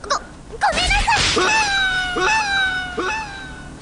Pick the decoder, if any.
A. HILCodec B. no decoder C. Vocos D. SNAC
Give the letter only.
B